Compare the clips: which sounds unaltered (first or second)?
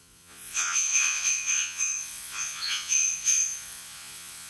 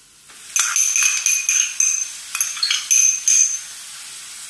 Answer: second